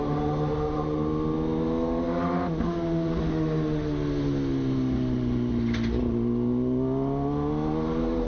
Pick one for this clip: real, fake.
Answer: real